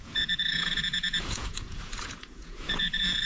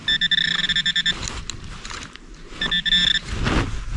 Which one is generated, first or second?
first